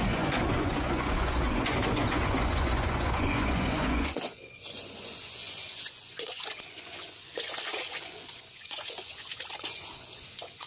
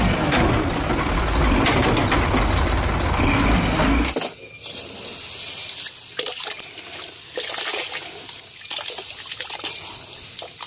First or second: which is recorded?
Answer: second